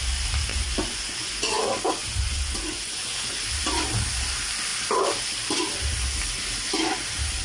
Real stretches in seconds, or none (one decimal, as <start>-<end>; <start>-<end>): 0.0-0.5; 1.6-2.0; 3.4-7.4